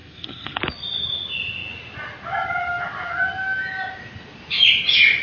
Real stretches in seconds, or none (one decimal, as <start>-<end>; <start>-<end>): 0.6-5.2